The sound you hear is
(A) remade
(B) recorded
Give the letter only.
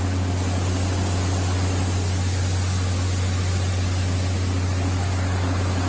B